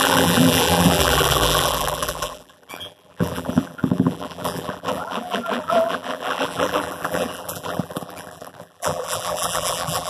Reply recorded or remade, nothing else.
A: remade